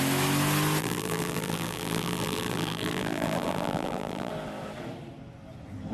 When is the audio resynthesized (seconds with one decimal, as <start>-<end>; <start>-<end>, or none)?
0.8-4.3